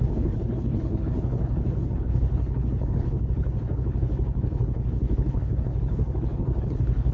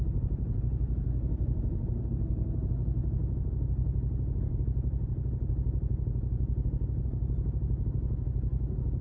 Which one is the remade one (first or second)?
first